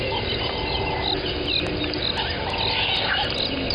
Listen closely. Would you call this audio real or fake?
real